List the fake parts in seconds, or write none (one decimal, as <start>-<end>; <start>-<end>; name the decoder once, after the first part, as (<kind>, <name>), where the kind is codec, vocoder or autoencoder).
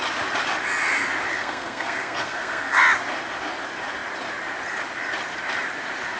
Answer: 1.3-2.8 (codec, SNAC)